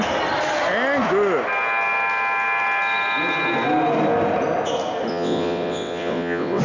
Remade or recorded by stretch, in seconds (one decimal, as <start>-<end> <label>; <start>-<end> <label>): 0.0-5.1 recorded; 5.1-6.6 remade